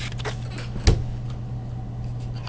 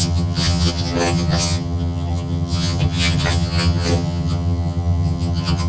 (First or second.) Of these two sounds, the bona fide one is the first